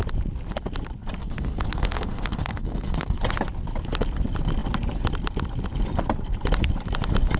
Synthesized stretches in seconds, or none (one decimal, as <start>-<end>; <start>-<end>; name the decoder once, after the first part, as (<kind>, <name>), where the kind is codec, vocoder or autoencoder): 1.2-3.2 (codec, SNAC)